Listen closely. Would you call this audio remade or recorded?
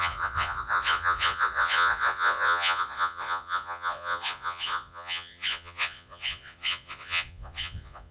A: remade